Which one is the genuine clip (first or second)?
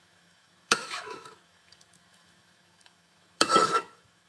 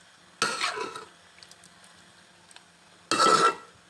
second